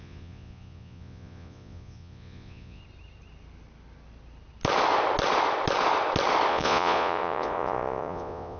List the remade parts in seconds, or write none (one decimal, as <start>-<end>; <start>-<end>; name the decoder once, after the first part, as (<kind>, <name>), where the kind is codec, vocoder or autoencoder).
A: 0.0-2.8 (vocoder, Vocos); 6.5-8.6